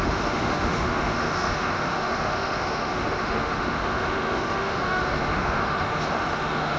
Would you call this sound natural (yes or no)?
no